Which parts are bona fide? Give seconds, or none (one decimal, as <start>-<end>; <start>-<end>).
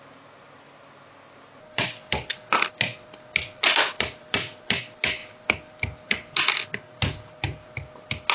0.0-8.3